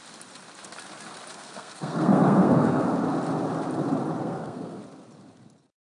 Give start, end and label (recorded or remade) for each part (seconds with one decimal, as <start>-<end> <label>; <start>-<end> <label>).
0.0-1.3 recorded; 1.3-2.9 remade; 2.9-4.2 recorded; 4.2-4.8 remade; 4.8-5.8 recorded